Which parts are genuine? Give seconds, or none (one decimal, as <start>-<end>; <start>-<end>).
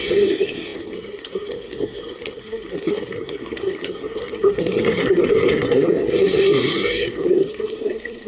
none